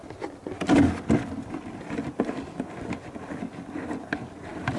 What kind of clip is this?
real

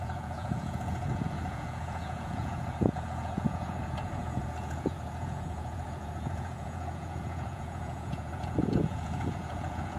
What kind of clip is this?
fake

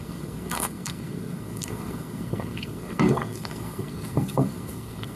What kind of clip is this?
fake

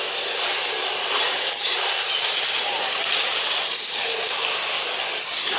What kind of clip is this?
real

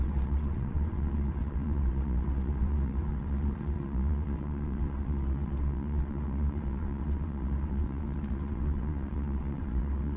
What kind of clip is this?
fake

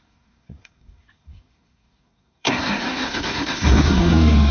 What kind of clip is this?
fake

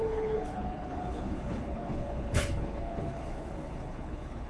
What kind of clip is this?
fake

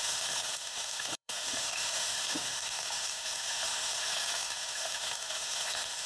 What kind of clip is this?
fake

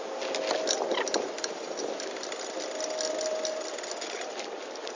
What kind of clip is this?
real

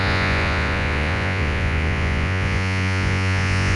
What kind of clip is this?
fake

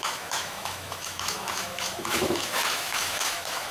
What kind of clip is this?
fake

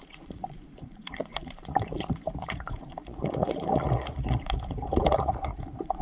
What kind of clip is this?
fake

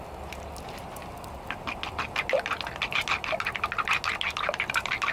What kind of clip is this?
real